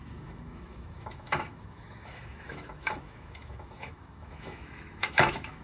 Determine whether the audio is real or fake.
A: fake